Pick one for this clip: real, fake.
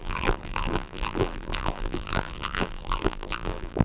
fake